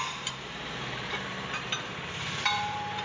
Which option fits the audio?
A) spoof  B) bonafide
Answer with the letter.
A